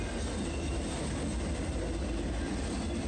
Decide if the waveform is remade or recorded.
recorded